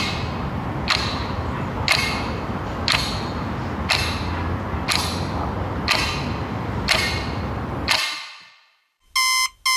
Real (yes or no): yes